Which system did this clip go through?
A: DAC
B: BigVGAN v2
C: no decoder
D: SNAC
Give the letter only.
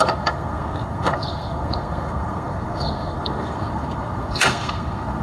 D